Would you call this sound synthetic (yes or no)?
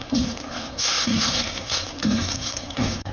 yes